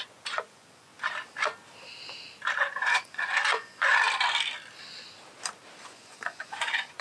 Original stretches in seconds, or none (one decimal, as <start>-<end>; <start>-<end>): 0.9-2.6; 3.9-5.8